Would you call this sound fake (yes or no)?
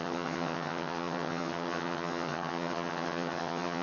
yes